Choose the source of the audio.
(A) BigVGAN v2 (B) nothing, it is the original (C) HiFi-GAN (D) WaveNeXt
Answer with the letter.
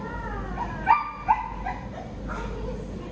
B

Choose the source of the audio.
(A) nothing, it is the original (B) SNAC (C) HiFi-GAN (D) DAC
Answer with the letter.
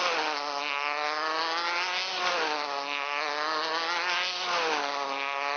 A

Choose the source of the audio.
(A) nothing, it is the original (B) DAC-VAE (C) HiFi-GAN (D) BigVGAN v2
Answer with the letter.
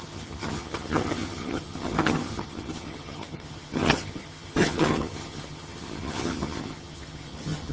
C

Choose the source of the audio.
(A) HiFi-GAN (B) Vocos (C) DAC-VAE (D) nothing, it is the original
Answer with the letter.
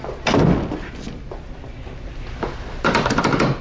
D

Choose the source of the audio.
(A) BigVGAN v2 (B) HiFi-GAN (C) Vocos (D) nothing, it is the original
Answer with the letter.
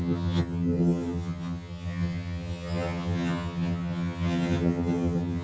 B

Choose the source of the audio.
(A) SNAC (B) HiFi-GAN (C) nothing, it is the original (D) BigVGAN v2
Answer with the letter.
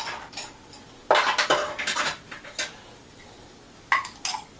C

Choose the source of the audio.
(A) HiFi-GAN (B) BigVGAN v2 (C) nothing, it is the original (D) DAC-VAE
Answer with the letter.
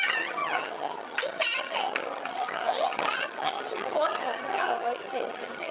A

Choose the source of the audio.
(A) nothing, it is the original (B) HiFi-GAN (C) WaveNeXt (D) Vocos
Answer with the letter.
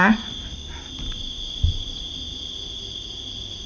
A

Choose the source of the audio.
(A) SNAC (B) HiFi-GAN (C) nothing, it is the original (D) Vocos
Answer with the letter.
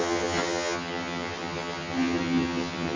B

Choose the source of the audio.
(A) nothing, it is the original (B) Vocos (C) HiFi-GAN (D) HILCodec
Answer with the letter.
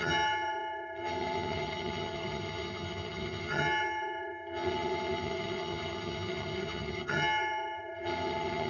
C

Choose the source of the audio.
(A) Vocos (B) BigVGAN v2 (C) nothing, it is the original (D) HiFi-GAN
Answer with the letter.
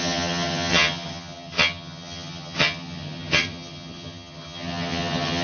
D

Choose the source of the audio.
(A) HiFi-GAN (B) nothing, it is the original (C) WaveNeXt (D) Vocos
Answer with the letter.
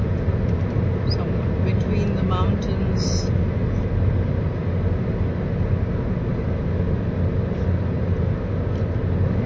B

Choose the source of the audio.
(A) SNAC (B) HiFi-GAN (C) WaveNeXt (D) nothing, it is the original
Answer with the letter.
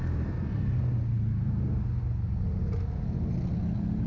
D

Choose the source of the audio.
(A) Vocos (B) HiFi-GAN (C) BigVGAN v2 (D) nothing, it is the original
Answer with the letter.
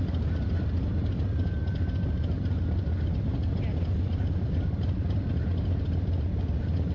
D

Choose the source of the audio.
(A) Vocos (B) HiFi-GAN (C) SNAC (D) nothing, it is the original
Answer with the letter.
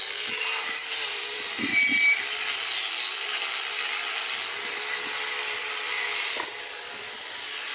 D